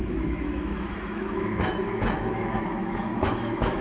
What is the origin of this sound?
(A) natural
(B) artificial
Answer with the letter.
B